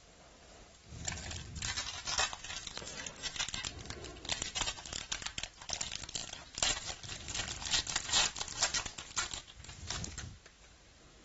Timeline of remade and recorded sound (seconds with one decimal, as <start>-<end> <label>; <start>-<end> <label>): 0.0-4.0 recorded; 4.0-5.5 remade; 5.5-11.2 recorded